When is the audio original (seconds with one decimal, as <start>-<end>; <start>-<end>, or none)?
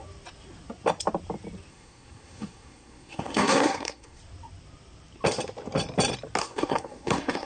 0.0-1.7; 4.2-6.4